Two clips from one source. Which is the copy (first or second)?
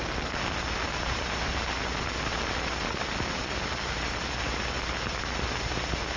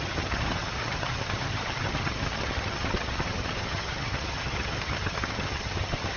second